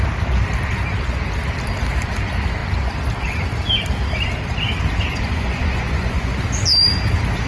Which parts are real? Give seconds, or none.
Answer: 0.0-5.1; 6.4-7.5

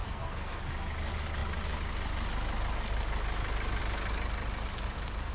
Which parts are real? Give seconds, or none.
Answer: 0.6-5.3